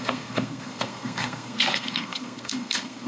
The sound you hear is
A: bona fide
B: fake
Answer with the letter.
B